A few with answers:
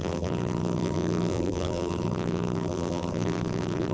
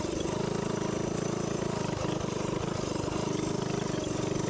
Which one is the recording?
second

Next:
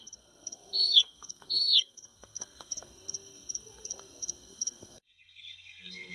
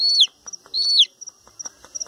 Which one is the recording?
second